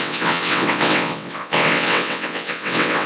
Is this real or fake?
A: fake